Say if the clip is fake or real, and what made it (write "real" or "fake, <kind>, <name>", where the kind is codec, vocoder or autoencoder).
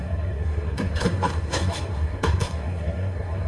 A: fake, codec, SNAC